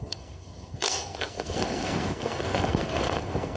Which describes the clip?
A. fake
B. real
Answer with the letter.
A